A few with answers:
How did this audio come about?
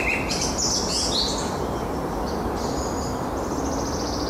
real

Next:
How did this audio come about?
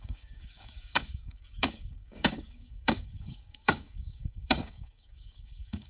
fake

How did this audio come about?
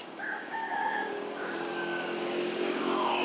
fake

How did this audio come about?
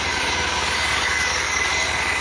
fake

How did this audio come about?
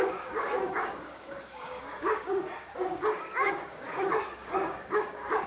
fake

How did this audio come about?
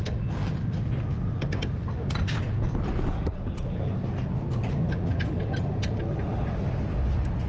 real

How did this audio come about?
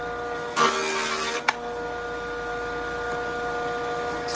real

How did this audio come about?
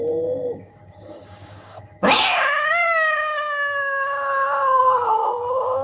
fake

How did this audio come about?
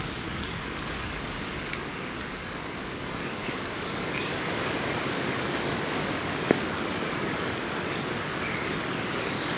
fake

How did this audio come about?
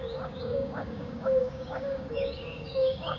fake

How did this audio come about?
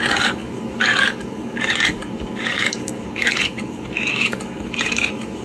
fake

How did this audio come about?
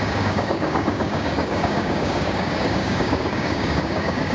fake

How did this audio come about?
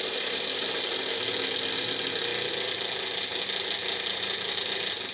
real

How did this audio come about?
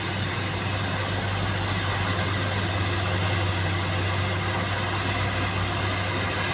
real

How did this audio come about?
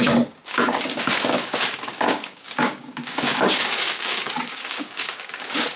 fake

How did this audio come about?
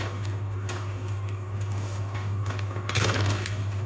fake